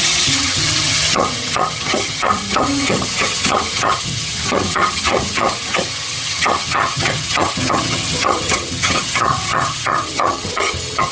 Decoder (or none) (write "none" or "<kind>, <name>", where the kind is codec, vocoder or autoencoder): vocoder, HiFi-GAN